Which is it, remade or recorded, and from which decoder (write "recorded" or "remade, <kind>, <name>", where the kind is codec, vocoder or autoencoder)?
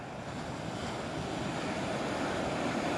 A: recorded